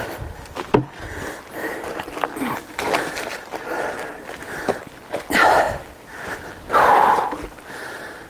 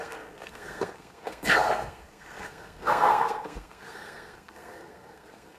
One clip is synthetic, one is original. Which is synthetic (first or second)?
second